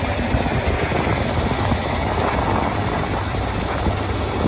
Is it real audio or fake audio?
real